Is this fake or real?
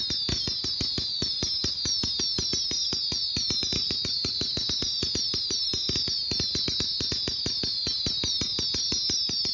real